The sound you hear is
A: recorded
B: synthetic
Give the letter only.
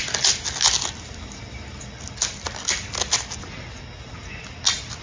A